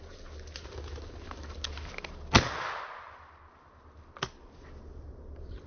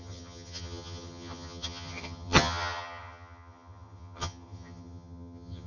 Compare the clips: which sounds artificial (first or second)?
second